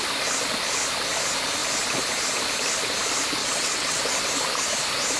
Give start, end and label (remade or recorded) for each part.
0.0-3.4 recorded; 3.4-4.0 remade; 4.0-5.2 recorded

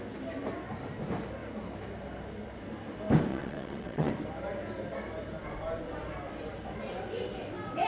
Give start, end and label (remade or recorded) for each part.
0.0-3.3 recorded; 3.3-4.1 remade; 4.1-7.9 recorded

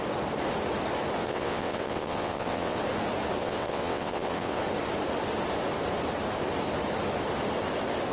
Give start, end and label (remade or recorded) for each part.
0.0-1.2 recorded; 1.2-2.8 remade; 2.8-3.4 recorded; 3.4-4.6 remade; 4.6-8.1 recorded

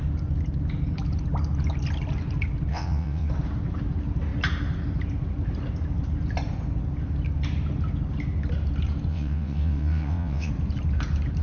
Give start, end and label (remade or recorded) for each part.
0.0-2.7 recorded; 2.7-3.3 remade; 3.3-9.1 recorded; 9.1-10.5 remade; 10.5-11.4 recorded